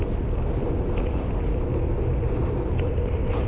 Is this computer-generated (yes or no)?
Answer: no